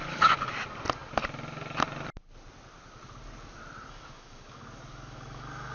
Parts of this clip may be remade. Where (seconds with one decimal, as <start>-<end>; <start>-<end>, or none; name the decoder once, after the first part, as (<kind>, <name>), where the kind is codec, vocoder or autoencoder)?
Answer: 0.0-0.5 (codec, DAC); 3.9-5.7